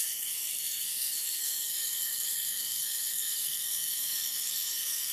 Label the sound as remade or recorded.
remade